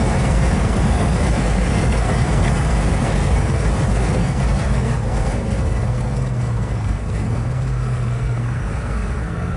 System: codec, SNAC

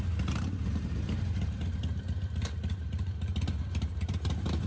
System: vocoder, BigVGAN v2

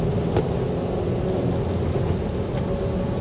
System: none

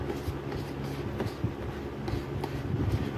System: none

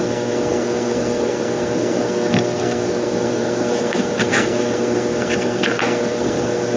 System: codec, SNAC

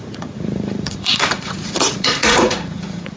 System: vocoder, Vocos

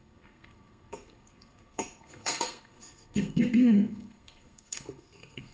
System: codec, SNAC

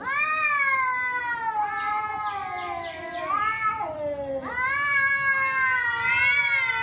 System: none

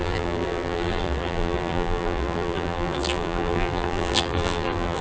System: vocoder, BigVGAN v2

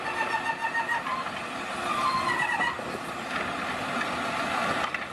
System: none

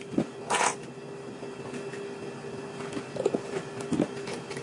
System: none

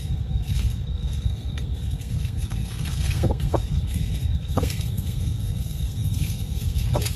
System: codec, SNAC